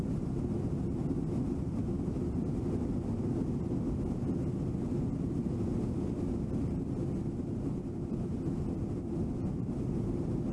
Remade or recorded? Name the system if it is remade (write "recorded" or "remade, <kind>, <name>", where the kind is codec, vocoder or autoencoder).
recorded